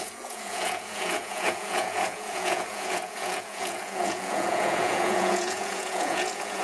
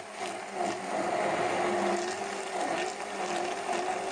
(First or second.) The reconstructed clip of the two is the first